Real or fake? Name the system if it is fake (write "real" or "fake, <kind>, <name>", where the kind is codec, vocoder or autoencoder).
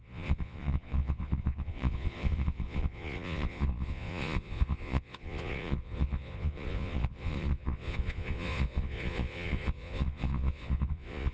fake, vocoder, Vocos